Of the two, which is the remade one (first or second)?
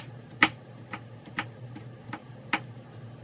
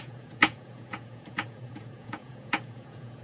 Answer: second